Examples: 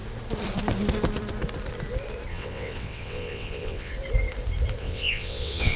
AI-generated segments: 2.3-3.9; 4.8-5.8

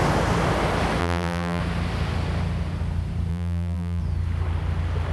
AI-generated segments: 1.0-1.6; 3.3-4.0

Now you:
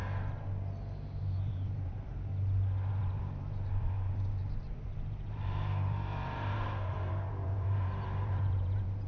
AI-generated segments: 1.2-2.3; 2.9-9.1